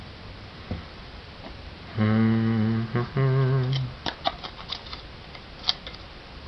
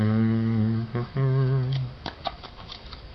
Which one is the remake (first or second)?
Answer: second